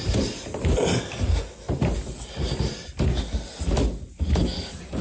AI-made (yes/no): no